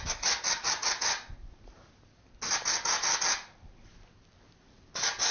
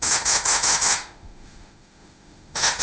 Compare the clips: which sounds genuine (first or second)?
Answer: first